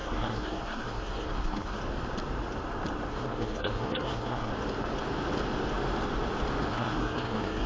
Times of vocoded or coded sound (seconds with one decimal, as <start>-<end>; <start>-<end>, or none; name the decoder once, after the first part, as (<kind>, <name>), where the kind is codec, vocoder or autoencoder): 0.0-1.8 (codec, SNAC); 3.1-4.5; 6.7-7.7